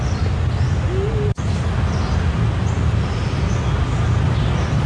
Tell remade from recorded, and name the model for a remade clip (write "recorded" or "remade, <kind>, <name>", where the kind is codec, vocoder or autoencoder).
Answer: recorded